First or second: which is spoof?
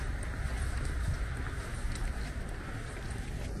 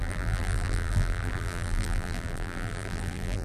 second